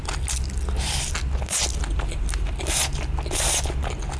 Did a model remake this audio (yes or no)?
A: no